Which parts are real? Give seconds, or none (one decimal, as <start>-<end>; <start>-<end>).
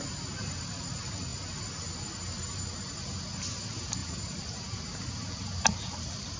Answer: 0.0-6.4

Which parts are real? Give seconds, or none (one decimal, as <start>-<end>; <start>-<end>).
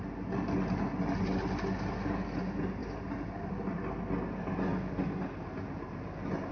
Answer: 0.0-2.8; 3.5-6.5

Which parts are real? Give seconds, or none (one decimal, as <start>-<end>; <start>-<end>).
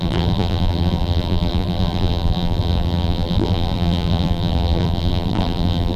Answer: none